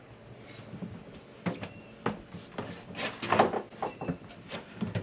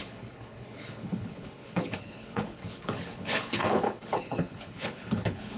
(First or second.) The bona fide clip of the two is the first